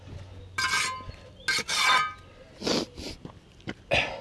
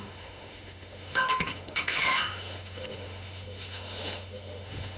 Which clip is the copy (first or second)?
second